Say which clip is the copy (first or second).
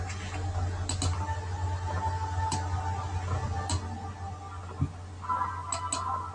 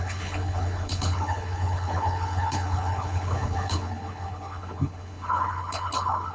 second